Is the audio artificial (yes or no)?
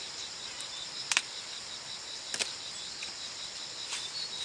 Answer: yes